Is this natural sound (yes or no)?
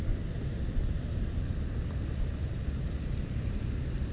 yes